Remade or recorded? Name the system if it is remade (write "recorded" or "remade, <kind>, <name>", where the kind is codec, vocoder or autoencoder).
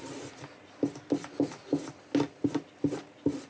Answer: recorded